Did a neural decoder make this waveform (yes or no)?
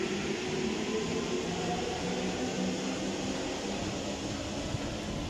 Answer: no